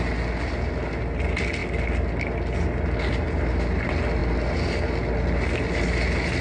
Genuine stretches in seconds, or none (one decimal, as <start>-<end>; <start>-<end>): 0.0-6.4